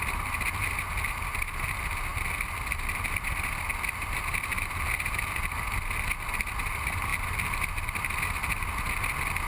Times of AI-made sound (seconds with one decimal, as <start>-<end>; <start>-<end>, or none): none